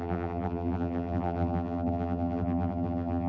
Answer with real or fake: fake